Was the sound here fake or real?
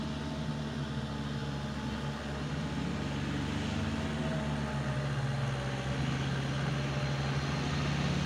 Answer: real